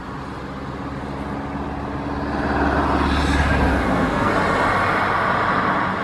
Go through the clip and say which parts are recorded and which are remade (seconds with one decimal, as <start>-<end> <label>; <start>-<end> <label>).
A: 0.0-3.7 recorded; 3.7-4.3 remade; 4.3-6.0 recorded